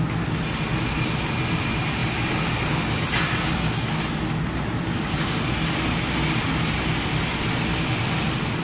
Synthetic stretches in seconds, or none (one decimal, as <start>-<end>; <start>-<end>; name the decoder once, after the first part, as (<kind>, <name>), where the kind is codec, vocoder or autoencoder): none

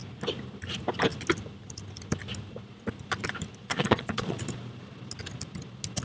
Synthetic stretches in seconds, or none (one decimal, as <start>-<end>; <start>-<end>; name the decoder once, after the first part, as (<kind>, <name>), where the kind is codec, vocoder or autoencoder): 3.6-4.4 (vocoder, Vocos)

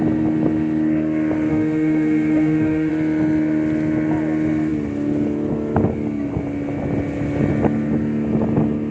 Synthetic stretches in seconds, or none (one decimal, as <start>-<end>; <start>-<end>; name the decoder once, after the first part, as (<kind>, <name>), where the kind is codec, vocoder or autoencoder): 1.5-2.9 (autoencoder, DAC-VAE)

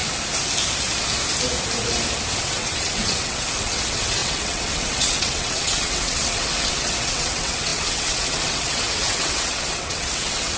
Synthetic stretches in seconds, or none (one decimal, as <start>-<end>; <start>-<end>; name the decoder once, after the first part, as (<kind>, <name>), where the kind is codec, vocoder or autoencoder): 2.4-10.6 (vocoder, WaveNeXt)

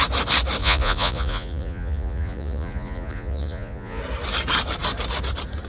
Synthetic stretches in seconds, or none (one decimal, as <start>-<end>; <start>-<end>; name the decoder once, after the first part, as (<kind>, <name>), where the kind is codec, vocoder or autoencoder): 0.6-4.0 (vocoder, Vocos)